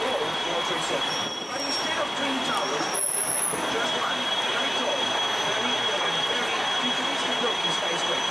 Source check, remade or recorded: recorded